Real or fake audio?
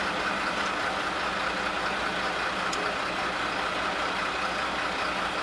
real